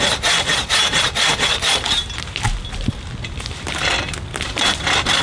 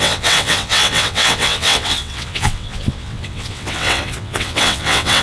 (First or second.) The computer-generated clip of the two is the second